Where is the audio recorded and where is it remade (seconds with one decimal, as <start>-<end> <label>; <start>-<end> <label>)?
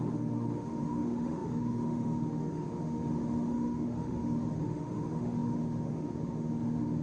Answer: 0.0-7.0 remade